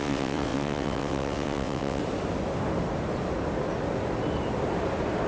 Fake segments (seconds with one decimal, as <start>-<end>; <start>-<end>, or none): 0.0-2.0